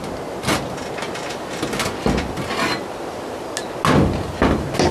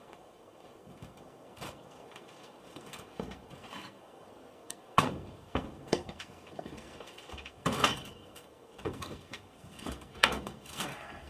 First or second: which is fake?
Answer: second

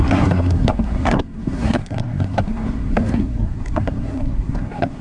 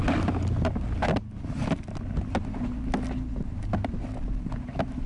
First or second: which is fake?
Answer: first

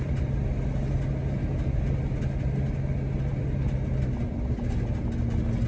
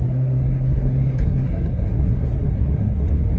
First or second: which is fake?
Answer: second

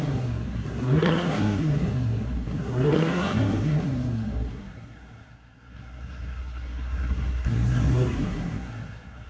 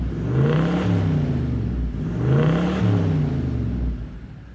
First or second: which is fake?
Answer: first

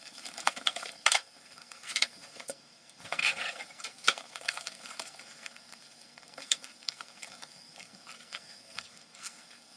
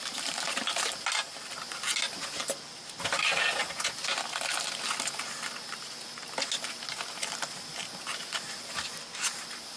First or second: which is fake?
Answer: first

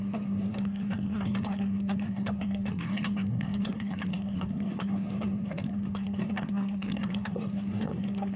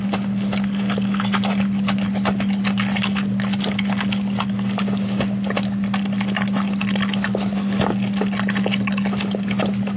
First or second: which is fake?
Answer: first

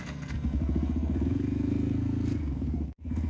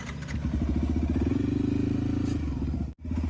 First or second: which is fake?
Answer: first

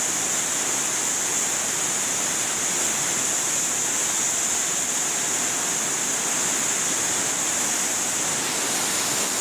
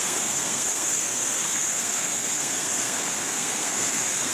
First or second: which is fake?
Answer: second